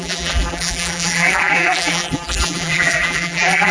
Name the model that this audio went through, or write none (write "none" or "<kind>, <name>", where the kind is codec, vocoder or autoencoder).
vocoder, BigVGAN v2